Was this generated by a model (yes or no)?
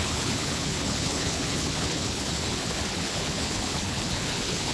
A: yes